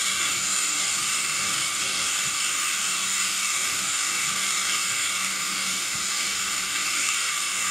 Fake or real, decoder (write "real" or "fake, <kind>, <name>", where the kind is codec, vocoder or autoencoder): fake, codec, DAC